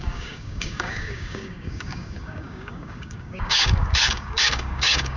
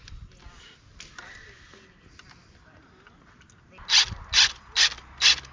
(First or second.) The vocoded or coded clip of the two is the first